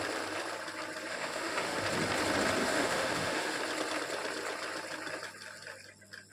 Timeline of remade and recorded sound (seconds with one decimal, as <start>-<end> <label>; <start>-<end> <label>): 0.0-1.1 recorded; 1.1-1.8 remade; 1.8-2.6 recorded; 2.6-3.6 remade; 3.6-6.3 recorded

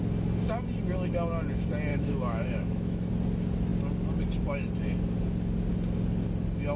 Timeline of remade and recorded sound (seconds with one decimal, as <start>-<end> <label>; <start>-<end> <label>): 0.0-1.9 recorded; 1.9-3.1 remade; 3.1-6.8 recorded

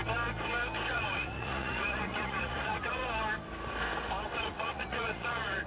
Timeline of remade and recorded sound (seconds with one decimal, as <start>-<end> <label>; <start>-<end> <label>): 0.0-0.9 recorded; 0.9-3.0 remade; 3.0-4.3 recorded; 4.3-5.7 remade